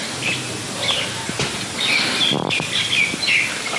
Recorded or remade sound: recorded